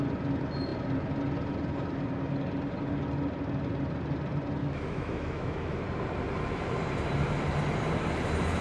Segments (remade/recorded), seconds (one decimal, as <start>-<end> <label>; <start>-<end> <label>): 0.0-4.6 recorded; 4.6-5.8 remade; 5.8-8.6 recorded